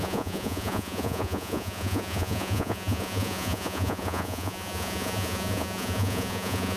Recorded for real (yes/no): no